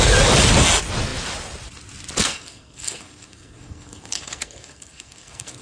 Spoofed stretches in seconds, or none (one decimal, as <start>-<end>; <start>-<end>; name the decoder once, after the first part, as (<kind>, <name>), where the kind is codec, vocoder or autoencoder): 2.2-5.6 (codec, SNAC)